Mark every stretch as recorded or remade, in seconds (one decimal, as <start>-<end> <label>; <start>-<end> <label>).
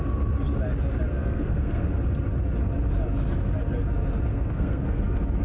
0.0-1.1 recorded; 1.1-1.9 remade; 1.9-4.3 recorded; 4.3-5.0 remade; 5.0-5.4 recorded